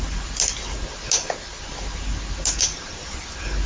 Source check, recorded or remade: recorded